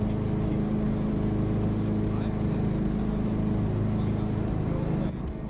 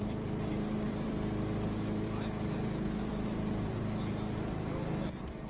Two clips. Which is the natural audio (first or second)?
first